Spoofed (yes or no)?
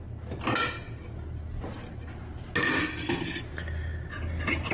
no